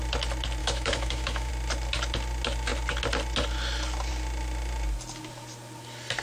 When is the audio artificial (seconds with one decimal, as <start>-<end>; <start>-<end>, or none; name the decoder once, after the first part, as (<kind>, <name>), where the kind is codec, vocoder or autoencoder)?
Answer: 0.6-1.5 (autoencoder, DAC-VAE)